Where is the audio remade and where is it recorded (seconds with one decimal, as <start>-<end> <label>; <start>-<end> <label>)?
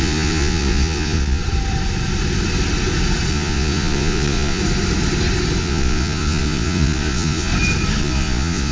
0.0-1.4 remade; 1.4-3.3 recorded; 3.3-4.6 remade; 4.6-5.6 recorded; 5.6-7.5 remade; 7.5-8.0 recorded; 8.0-8.7 remade